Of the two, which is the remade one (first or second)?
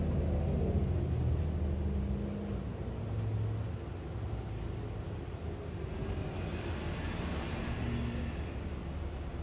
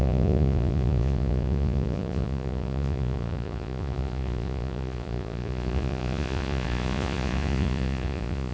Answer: second